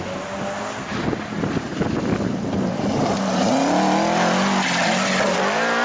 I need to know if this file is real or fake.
real